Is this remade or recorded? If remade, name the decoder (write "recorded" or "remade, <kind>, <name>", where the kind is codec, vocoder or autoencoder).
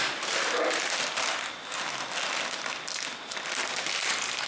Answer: recorded